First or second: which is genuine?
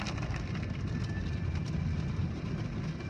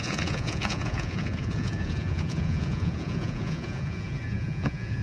first